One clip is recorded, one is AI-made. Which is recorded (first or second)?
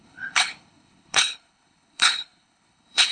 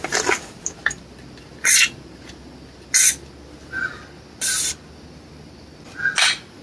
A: second